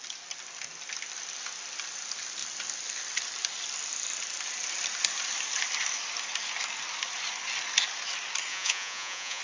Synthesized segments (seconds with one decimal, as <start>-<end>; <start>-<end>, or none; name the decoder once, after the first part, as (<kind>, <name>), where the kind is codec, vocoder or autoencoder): 8.5-9.4 (vocoder, Vocos)